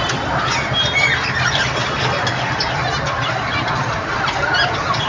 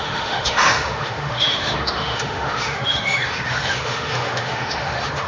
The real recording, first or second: first